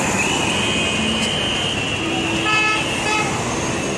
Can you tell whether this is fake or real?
real